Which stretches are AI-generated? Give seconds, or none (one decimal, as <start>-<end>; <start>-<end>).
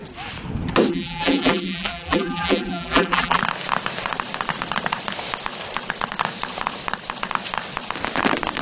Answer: 0.9-3.4